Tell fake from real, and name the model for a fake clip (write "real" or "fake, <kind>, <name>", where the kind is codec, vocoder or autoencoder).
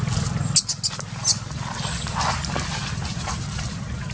real